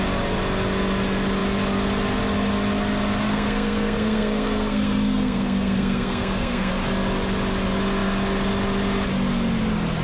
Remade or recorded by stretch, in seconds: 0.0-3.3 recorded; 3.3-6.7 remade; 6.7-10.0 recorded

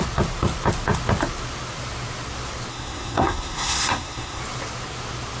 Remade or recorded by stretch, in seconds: 0.0-2.7 recorded; 2.7-4.4 remade; 4.4-5.4 recorded

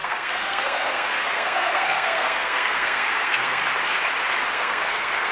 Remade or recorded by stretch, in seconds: 0.0-3.6 remade; 3.6-4.5 recorded; 4.5-5.3 remade

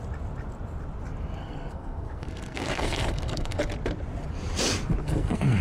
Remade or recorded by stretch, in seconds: 0.0-1.4 recorded; 1.4-3.6 remade; 3.6-5.0 recorded; 5.0-5.6 remade

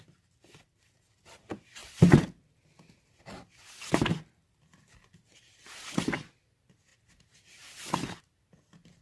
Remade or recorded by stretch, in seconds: 0.0-9.0 recorded

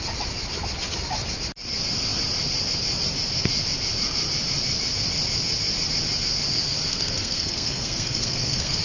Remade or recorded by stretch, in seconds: 0.0-6.9 recorded; 6.9-8.8 remade

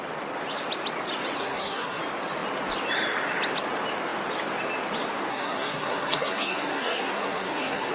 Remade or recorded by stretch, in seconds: 0.0-1.4 recorded; 1.4-2.0 remade; 2.0-5.3 recorded; 5.3-7.9 remade